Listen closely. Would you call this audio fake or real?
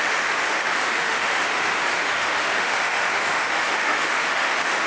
fake